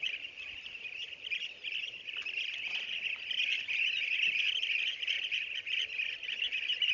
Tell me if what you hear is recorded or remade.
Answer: recorded